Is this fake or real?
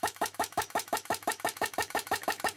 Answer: fake